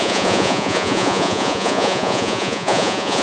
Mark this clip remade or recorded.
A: remade